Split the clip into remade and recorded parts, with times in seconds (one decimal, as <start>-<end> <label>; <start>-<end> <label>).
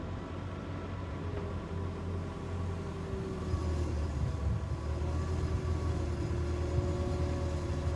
0.0-8.0 recorded